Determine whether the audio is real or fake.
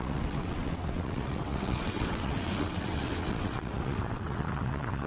fake